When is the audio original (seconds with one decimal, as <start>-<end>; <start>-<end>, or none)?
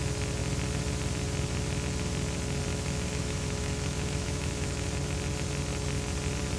0.0-2.7; 4.9-6.6